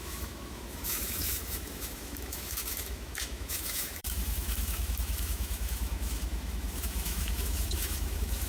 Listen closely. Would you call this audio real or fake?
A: fake